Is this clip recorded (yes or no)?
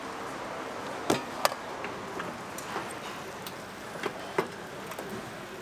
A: yes